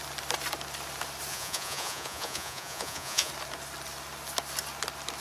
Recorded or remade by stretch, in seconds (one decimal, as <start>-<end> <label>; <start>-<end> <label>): 0.0-1.3 recorded; 1.3-3.3 remade; 3.3-5.2 recorded